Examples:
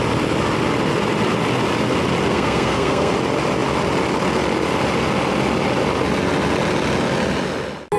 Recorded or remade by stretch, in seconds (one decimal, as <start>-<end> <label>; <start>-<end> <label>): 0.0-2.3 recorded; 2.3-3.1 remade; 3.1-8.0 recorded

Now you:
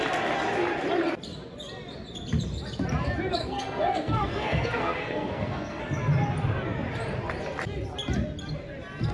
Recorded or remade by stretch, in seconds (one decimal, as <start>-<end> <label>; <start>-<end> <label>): 0.0-3.4 recorded; 3.4-5.8 remade; 5.8-9.1 recorded

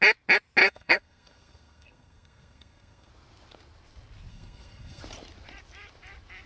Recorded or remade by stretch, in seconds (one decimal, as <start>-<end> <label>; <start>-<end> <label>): 0.0-0.6 recorded; 0.6-3.1 remade; 3.1-4.3 recorded; 4.3-5.0 remade; 5.0-6.5 recorded

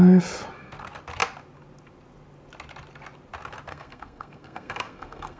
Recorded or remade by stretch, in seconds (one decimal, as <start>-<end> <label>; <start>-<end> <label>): 0.0-3.7 recorded; 3.7-5.4 remade

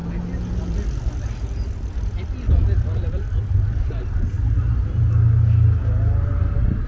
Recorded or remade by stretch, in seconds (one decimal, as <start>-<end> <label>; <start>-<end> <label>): 0.0-6.9 recorded

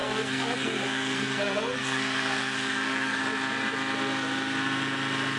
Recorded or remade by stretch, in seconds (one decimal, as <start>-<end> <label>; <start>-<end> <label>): 0.0-3.2 remade; 3.2-5.4 recorded

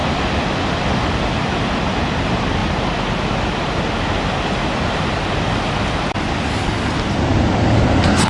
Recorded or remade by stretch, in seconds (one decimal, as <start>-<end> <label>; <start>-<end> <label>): 0.0-8.3 recorded